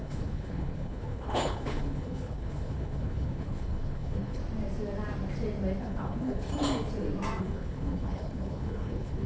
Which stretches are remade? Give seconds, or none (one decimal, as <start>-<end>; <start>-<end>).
0.0-4.4; 5.8-6.5; 7.4-9.3